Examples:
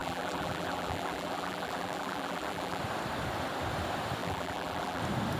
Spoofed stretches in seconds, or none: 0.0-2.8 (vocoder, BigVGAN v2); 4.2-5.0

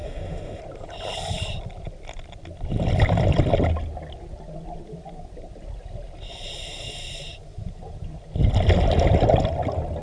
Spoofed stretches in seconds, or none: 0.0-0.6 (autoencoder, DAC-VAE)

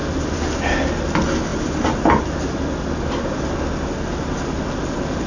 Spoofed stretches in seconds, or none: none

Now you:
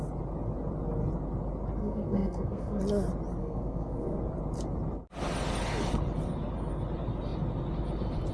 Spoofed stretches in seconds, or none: 1.8-2.8 (codec, SNAC); 3.4-4.2